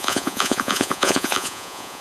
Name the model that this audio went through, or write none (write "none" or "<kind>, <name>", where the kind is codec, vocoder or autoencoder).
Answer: vocoder, Vocos